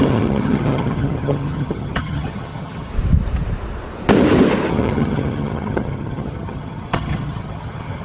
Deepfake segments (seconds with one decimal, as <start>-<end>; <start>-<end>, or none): 0.0-2.9; 4.7-8.0